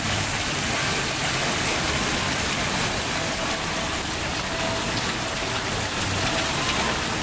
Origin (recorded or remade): recorded